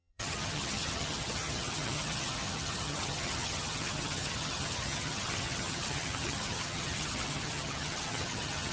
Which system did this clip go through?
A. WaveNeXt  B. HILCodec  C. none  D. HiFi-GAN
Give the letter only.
D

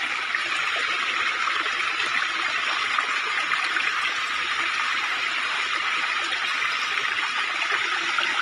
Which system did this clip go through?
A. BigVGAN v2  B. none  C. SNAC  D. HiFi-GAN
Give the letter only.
B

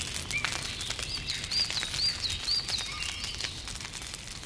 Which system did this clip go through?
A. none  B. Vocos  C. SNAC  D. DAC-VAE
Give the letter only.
A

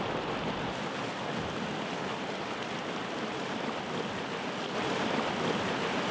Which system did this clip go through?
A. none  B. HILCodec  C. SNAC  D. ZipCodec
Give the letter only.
A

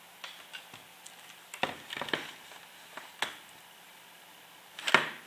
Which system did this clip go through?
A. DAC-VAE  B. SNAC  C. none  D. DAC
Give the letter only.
C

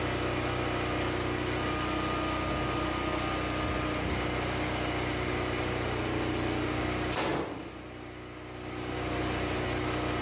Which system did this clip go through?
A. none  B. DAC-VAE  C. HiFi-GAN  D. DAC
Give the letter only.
A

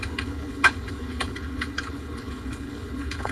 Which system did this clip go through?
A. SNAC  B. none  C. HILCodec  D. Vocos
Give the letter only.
C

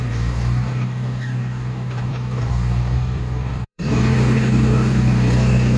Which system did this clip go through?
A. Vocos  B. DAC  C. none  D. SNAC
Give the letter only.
B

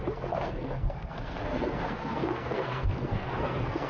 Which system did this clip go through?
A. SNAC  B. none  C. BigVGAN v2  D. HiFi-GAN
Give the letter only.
A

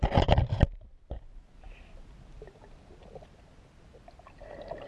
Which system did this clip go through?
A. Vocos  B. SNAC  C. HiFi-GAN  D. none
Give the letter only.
D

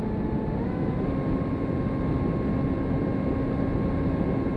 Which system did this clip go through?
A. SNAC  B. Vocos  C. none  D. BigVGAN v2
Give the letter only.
C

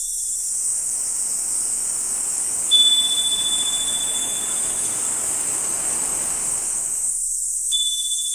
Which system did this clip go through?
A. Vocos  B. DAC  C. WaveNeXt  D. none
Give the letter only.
B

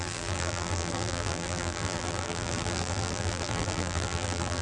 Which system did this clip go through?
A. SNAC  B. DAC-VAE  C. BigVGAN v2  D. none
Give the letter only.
C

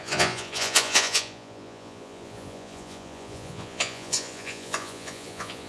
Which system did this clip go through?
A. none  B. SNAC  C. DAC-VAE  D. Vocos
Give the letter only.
D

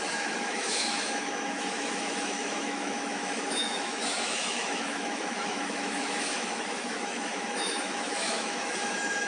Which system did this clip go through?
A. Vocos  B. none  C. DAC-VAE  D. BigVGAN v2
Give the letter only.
C